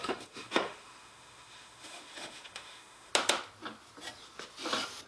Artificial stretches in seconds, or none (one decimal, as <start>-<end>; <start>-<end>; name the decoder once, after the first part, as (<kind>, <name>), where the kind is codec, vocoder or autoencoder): 0.0-3.1 (autoencoder, DAC-VAE)